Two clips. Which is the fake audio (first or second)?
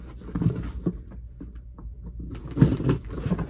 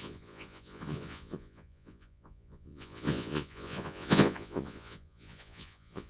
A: second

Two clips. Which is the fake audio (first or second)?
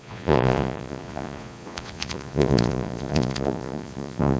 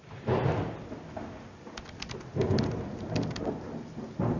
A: first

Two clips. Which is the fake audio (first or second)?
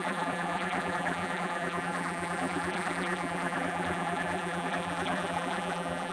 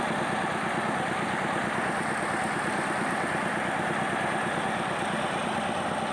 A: first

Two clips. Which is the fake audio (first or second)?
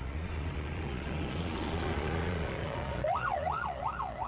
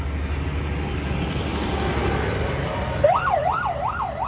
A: first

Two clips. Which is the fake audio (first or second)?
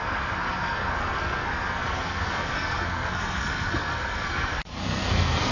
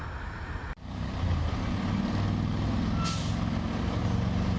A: first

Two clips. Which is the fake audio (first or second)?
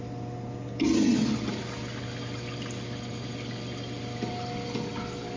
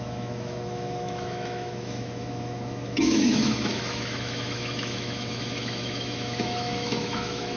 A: second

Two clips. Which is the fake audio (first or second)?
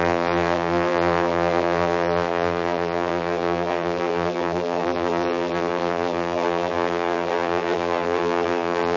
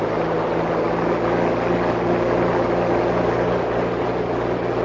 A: first